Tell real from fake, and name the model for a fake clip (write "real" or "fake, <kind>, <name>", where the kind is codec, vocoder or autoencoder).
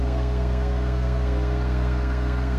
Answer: fake, codec, SNAC